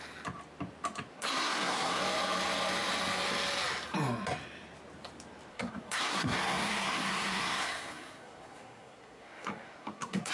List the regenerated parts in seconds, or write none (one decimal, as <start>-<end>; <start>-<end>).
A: 1.1-2.0; 5.5-10.3